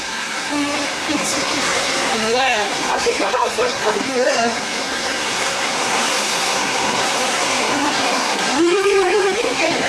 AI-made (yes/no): yes